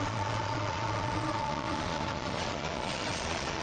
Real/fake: fake